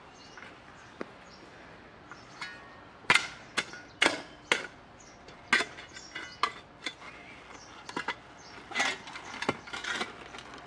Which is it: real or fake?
real